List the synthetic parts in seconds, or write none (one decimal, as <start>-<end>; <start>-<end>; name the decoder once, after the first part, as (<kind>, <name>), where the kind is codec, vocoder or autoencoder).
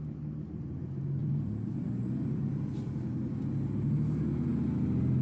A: 1.2-3.3 (vocoder, BigVGAN v2)